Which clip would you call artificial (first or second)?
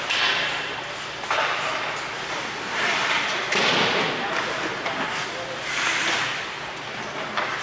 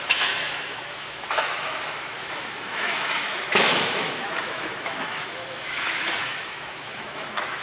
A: second